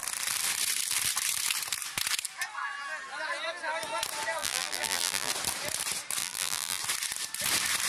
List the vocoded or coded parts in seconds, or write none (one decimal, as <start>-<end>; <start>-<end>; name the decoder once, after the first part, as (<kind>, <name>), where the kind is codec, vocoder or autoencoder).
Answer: 4.4-5.3 (vocoder, BigVGAN v2); 6.2-6.8